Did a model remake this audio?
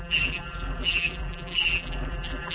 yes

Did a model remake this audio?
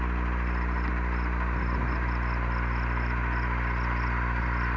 no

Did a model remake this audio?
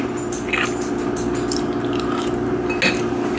no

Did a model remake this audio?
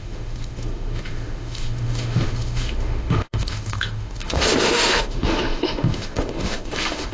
yes